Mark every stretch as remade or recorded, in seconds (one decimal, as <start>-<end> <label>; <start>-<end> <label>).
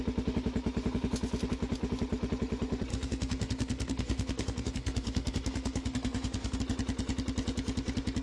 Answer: 0.0-2.9 recorded; 2.9-6.6 remade; 6.6-8.2 recorded